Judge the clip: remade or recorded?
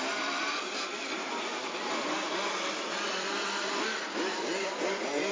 remade